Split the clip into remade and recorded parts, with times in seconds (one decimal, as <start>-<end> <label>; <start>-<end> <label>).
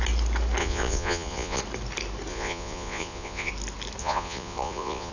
0.0-0.6 recorded; 0.6-1.6 remade; 1.6-2.3 recorded; 2.3-3.5 remade; 3.5-4.0 recorded; 4.0-5.1 remade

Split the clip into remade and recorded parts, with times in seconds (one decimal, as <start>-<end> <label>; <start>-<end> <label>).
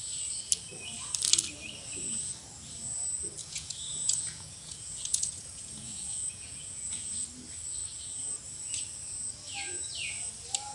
0.0-3.4 recorded; 3.4-7.1 remade; 7.1-10.7 recorded